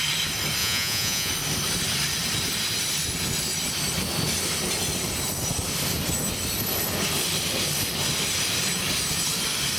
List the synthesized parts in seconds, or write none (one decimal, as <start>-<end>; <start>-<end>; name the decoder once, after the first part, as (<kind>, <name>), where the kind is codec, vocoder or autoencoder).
0.6-1.3 (vocoder, Vocos)

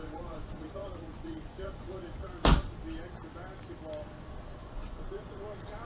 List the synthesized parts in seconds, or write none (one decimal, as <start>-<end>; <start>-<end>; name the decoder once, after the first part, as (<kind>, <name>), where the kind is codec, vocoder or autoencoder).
0.0-2.3 (vocoder, Vocos); 4.6-5.4

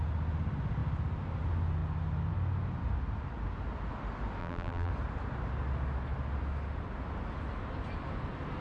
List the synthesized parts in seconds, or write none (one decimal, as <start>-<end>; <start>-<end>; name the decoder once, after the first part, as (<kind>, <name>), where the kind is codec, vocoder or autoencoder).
4.4-4.9 (vocoder, BigVGAN v2)

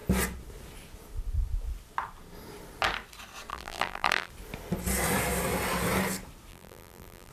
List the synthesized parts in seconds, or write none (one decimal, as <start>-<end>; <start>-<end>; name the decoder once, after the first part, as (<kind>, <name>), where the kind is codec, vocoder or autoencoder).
3.5-4.3 (vocoder, BigVGAN v2); 6.5-7.3

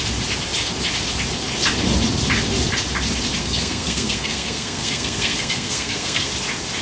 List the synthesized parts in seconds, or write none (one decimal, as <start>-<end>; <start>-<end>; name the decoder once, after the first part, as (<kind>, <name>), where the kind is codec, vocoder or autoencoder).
3.4-6.3 (codec, SNAC)

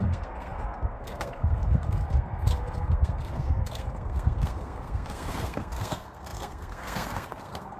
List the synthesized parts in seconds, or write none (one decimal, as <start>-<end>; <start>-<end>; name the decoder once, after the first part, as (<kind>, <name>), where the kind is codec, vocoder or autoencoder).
0.0-7.8 (codec, SNAC)

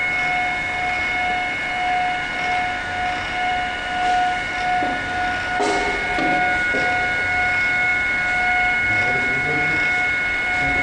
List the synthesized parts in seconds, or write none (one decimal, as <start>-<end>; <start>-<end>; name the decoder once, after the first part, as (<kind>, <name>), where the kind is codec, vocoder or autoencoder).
none